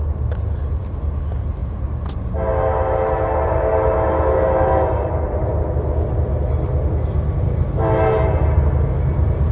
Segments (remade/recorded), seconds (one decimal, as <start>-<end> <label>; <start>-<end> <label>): 0.0-9.5 recorded